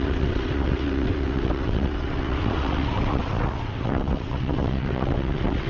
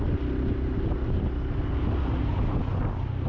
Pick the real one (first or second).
second